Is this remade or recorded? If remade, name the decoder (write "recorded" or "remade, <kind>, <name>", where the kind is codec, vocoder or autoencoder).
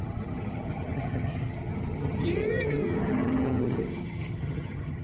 remade, vocoder, HiFi-GAN